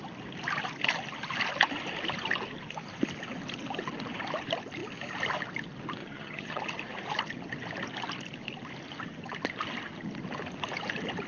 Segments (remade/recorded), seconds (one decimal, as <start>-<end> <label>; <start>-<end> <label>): 0.0-6.0 recorded; 6.0-6.6 remade; 6.6-11.3 recorded